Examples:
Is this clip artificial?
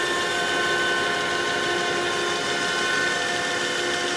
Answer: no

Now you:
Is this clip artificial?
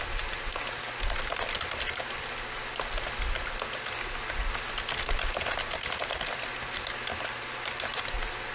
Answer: no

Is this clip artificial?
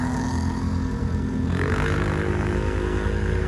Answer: yes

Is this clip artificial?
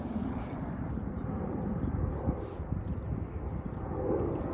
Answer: yes